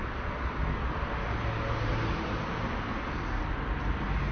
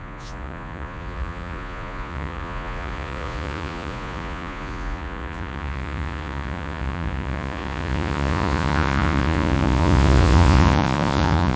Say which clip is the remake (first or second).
second